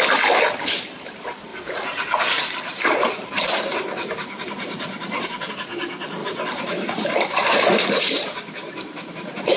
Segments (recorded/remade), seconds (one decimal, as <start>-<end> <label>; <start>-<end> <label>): 0.0-1.5 recorded; 1.5-5.5 remade; 5.5-6.2 recorded; 6.2-9.6 remade